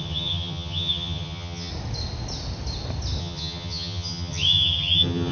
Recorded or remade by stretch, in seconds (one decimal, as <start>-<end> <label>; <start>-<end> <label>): 0.0-1.7 remade; 1.7-3.2 recorded; 3.2-5.3 remade